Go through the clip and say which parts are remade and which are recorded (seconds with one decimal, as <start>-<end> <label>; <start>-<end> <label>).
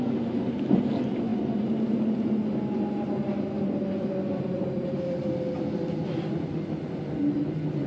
0.0-7.9 recorded